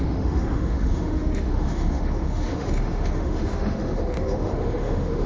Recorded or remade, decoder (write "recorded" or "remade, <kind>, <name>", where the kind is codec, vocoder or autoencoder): remade, autoencoder, DAC-VAE